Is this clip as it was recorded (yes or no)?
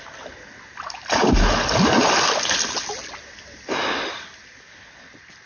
yes